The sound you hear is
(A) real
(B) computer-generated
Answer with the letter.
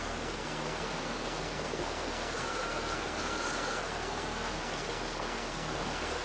B